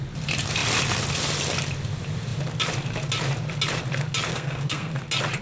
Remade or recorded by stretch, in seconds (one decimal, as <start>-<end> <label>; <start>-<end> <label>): 0.0-4.3 recorded; 4.3-4.9 remade; 4.9-5.4 recorded